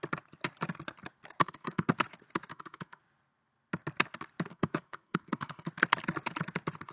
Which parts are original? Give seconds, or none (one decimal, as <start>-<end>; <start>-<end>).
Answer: 0.0-1.4; 1.9-2.5; 3.0-4.5; 5.7-6.9

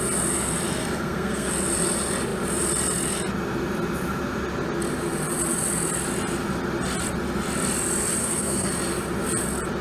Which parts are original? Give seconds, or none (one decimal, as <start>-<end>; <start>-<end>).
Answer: 0.0-0.8; 1.5-8.2; 8.7-9.8

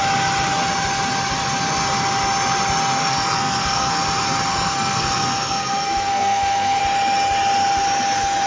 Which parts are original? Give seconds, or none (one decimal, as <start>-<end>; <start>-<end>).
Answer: 0.0-3.0; 4.0-4.5; 6.8-8.5

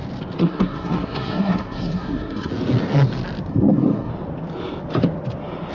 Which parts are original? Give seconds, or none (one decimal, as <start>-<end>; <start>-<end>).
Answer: 0.0-0.4; 2.5-3.5; 4.1-5.7

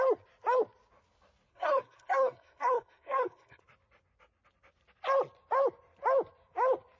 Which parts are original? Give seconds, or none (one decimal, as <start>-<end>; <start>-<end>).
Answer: 0.0-1.5; 3.6-7.0

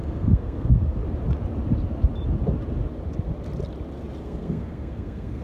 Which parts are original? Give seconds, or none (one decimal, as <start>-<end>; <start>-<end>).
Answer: 1.0-4.2